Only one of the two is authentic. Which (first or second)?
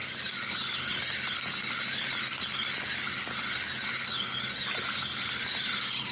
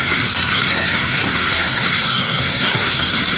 first